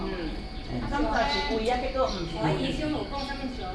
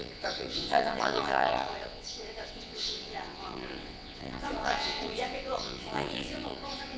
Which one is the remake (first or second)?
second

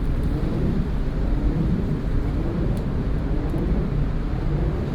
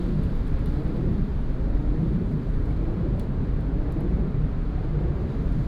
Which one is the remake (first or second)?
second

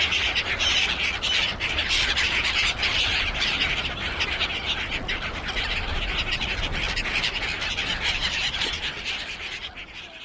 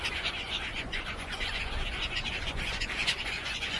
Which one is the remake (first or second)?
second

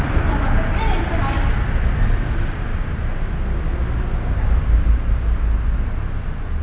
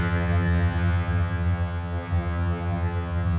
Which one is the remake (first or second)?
second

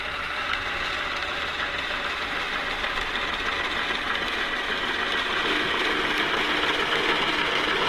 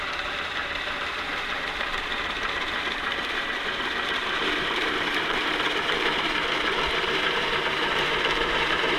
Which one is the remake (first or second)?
second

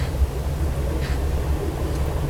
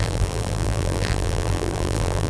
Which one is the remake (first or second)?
second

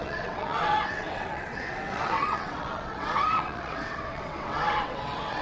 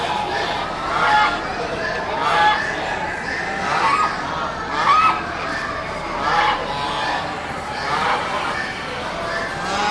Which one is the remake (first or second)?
first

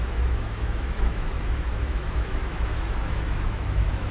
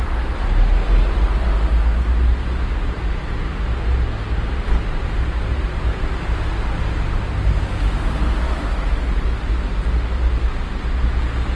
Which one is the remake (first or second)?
first